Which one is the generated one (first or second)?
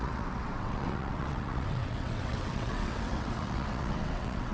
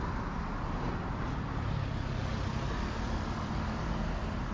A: first